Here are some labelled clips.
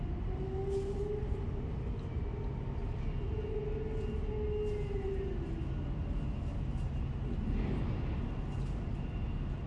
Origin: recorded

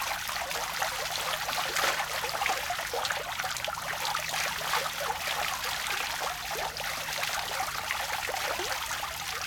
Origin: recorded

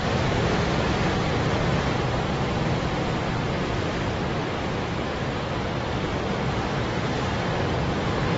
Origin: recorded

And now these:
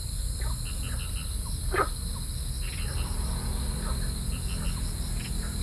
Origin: recorded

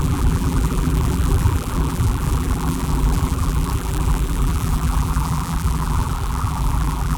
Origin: remade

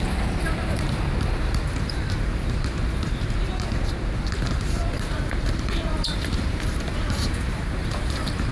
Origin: remade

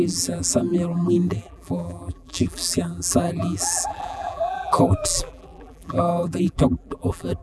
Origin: remade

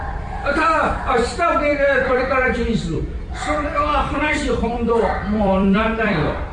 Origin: remade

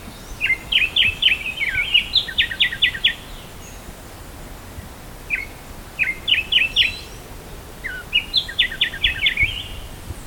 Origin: recorded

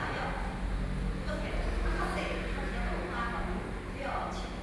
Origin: recorded